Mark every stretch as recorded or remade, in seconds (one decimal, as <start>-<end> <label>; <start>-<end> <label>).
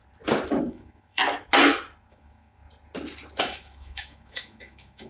0.0-0.7 recorded; 0.7-1.2 remade; 1.2-2.1 recorded; 2.1-2.6 remade; 2.6-3.4 recorded; 3.4-5.1 remade